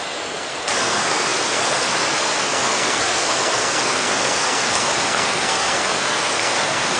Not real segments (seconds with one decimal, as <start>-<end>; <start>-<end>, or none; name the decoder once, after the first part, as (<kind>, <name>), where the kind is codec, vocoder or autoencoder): 0.0-7.0 (codec, SNAC)